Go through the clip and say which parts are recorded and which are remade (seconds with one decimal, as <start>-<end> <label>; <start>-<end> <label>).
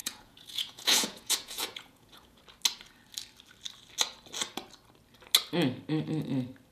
0.0-2.4 remade; 2.4-6.7 recorded